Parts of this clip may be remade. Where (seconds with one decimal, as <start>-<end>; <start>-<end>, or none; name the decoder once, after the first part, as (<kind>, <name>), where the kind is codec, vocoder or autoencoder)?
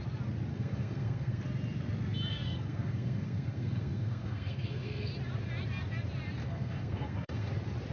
0.5-1.4 (codec, SNAC); 2.3-5.1; 6.4-7.5